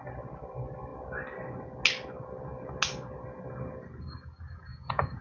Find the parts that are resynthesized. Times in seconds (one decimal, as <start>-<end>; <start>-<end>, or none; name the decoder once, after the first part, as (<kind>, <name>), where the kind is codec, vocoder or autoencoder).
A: 4.7-5.2 (vocoder, Vocos)

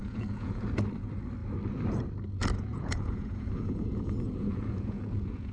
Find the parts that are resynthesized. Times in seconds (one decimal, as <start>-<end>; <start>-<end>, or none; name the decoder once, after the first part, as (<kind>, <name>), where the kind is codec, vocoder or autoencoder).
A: 0.0-0.6 (vocoder, Vocos); 2.7-5.5

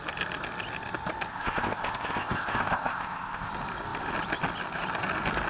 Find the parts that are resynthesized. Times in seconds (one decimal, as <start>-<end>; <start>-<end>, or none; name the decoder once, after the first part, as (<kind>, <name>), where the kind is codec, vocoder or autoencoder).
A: 1.3-3.5 (codec, ZipCodec)